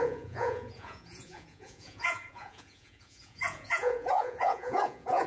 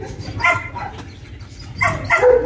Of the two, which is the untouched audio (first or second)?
second